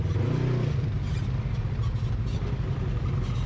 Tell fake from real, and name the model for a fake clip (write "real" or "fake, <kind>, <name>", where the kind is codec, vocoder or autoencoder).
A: real